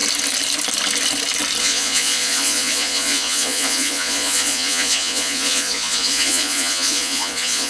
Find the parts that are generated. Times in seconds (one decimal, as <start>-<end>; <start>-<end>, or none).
1.6-7.7